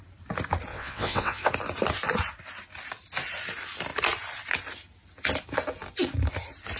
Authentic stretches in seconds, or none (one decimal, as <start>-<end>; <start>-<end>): 0.0-0.7; 1.5-6.8